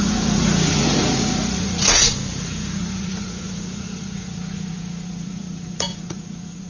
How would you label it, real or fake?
fake